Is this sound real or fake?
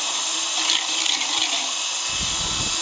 real